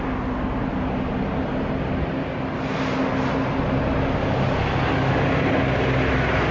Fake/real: real